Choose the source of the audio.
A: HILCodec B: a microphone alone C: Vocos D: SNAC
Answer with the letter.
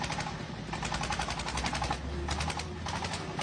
B